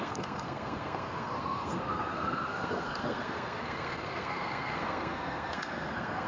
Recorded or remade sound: remade